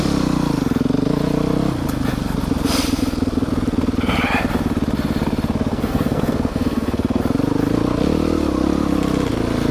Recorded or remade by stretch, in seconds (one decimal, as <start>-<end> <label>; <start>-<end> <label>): 0.0-5.7 recorded; 5.7-7.2 remade; 7.2-9.7 recorded